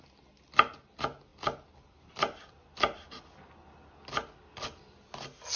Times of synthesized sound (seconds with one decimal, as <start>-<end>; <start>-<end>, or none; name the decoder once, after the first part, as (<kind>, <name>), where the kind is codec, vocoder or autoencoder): none

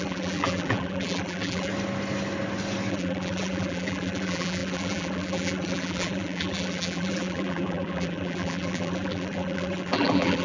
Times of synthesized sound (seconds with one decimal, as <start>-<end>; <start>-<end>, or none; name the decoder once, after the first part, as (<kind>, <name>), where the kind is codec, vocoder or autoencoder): 0.0-1.7 (vocoder, BigVGAN v2); 2.9-10.4

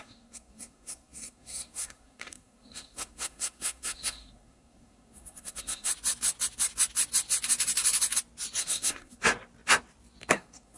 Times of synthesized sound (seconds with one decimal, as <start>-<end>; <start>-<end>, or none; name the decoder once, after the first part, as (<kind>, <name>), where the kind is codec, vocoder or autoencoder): 0.0-5.9 (codec, SNAC); 8.6-9.2; 10.3-10.8